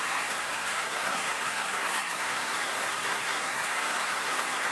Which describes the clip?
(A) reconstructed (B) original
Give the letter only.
A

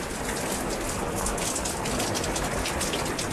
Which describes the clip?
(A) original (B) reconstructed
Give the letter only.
A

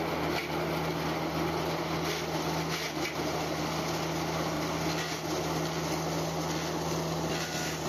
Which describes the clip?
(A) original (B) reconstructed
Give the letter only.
A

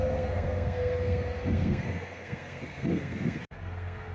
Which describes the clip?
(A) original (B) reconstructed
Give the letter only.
B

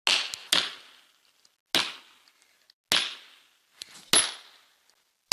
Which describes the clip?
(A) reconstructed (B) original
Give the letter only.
B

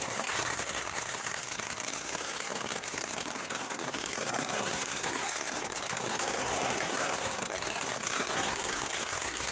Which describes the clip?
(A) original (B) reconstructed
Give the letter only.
B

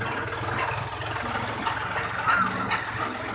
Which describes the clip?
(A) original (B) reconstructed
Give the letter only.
A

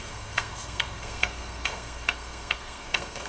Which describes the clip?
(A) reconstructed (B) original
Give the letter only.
A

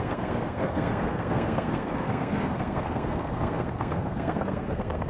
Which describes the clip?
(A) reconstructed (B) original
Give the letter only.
A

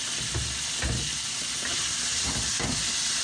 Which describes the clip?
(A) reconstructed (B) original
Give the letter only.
B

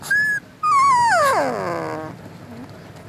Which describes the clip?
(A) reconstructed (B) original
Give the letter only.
B